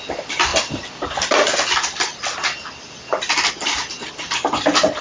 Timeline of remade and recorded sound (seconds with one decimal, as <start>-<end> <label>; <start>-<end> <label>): 0.0-5.0 recorded